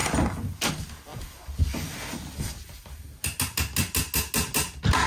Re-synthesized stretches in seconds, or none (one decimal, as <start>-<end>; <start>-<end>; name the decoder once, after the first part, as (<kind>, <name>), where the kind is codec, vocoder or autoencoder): none